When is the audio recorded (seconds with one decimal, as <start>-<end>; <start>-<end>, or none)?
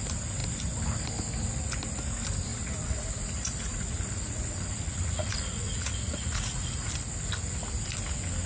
0.0-2.5; 6.9-8.5